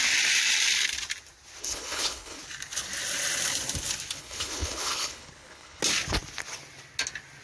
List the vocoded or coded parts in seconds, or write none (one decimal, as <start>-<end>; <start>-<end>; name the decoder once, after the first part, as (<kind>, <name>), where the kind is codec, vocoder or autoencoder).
1.6-2.4 (codec, HILCodec); 4.2-5.8